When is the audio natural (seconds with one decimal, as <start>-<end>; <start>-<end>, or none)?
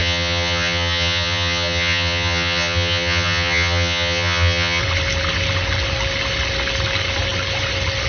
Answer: 4.8-8.1